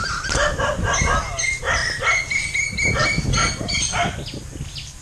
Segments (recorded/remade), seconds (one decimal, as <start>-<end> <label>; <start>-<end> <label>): 0.0-5.0 recorded

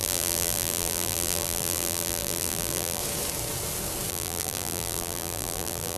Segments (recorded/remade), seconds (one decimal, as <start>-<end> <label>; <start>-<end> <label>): 0.0-3.0 remade; 3.0-4.1 recorded; 4.1-6.0 remade

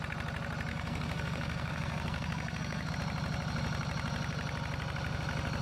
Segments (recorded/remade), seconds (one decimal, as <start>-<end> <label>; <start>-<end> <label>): 0.0-0.7 recorded; 0.7-2.9 remade; 2.9-5.6 recorded

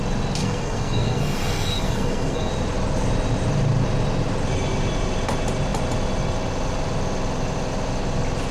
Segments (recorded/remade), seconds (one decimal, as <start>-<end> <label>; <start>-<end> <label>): 0.0-0.4 recorded; 0.4-2.5 remade; 2.5-8.5 recorded

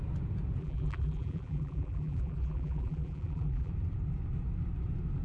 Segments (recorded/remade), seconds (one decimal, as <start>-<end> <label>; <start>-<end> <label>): 0.0-0.6 recorded; 0.6-3.7 remade; 3.7-5.2 recorded

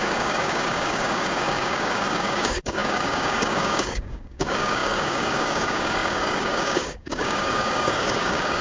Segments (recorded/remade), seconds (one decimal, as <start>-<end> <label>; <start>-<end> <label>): 0.0-8.6 remade